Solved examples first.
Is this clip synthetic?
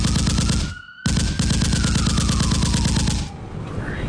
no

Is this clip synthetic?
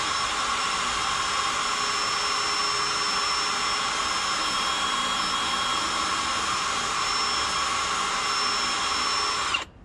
no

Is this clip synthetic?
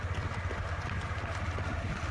no